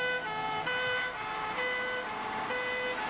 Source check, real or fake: real